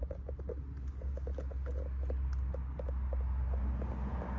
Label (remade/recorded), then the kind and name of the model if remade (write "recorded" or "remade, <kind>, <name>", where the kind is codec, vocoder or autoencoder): recorded